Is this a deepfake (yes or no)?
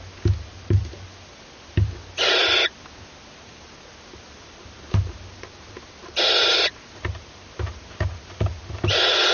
no